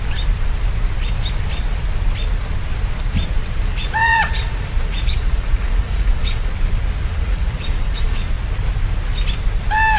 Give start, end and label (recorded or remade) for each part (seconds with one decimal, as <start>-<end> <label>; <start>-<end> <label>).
0.0-3.8 recorded; 3.8-6.5 remade; 6.5-7.0 recorded; 7.0-8.4 remade; 8.4-10.0 recorded